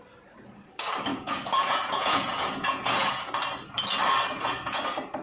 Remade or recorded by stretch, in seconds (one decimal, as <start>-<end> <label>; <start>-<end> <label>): 0.0-1.1 recorded; 1.1-3.3 remade; 3.3-4.3 recorded; 4.3-4.8 remade; 4.8-5.2 recorded